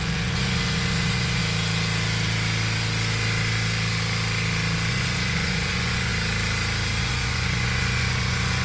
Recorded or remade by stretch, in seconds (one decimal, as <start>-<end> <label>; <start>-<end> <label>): 0.0-1.4 remade; 1.4-4.9 recorded; 4.9-6.1 remade; 6.1-7.0 recorded; 7.0-8.6 remade